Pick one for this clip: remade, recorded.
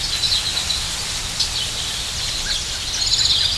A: recorded